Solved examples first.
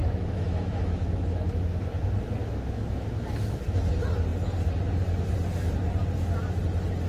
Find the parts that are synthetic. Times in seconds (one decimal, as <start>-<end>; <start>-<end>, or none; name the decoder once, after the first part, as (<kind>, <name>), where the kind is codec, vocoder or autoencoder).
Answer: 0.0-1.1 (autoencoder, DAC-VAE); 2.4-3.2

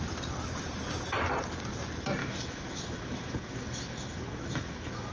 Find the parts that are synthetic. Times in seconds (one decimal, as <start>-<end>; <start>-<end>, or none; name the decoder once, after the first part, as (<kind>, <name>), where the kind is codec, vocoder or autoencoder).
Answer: 2.2-5.1 (autoencoder, DAC-VAE)

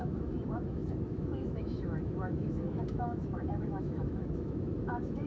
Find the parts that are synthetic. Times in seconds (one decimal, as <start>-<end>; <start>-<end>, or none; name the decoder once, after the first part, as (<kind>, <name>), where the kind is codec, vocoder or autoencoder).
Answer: 0.0-5.3 (autoencoder, DAC-VAE)